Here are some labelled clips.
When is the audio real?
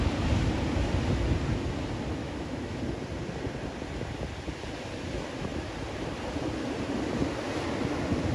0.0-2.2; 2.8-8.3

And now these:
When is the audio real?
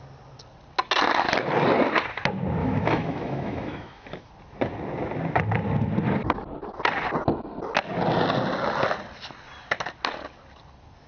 0.0-2.6; 4.3-11.1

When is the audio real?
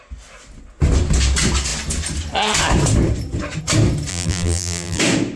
0.0-4.1; 5.0-5.4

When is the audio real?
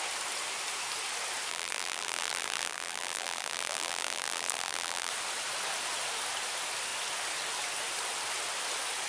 0.0-1.5; 5.1-9.1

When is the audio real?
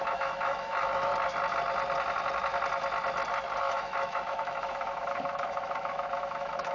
1.1-3.6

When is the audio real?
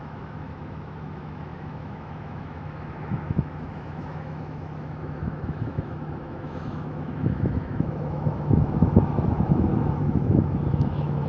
none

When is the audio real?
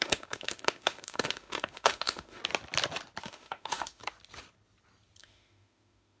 2.4-3.2; 4.0-5.2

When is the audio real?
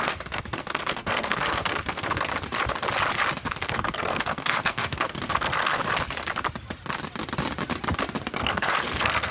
2.3-3.6; 5.8-8.3